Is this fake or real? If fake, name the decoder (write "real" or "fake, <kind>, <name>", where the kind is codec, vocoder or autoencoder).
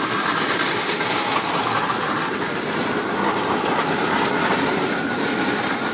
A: real